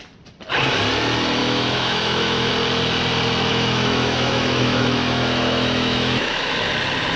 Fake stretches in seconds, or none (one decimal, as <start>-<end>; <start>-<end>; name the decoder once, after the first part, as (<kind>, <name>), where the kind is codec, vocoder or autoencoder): 1.4-2.5 (autoencoder, DAC-VAE); 3.5-6.7